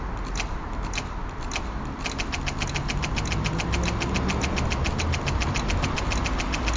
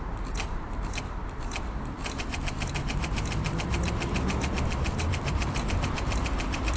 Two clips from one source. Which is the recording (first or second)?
first